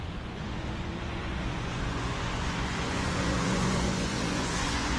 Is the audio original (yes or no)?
no